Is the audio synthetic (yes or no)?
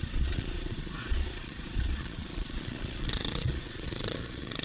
yes